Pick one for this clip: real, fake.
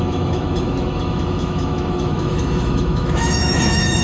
fake